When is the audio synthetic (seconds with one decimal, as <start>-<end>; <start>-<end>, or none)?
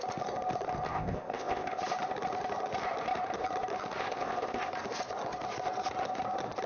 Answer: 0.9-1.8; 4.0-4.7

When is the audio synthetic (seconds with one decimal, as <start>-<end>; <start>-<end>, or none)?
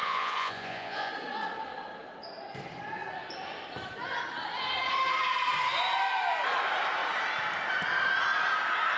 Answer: 0.0-1.1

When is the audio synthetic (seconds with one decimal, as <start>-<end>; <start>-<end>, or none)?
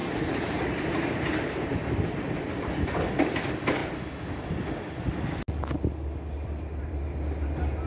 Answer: 0.0-2.4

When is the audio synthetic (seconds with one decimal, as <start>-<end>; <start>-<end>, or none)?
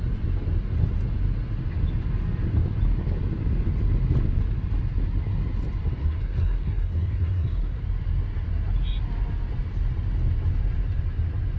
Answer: 6.0-7.8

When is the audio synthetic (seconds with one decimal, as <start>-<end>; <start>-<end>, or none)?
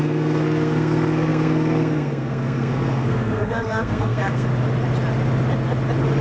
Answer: 0.0-4.5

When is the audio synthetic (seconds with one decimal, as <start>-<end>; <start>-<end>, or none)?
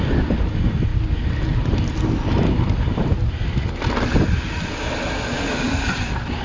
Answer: none